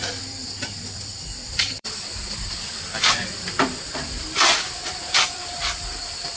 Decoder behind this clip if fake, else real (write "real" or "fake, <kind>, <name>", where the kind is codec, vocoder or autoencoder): fake, vocoder, BigVGAN v2